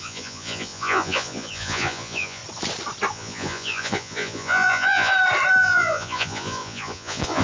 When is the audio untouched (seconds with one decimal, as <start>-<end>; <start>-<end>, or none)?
2.4-3.1; 5.1-5.6